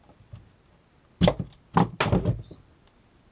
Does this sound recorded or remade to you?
recorded